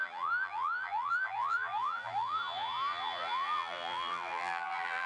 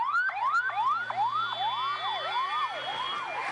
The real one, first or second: second